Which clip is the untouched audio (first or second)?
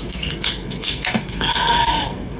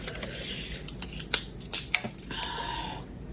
second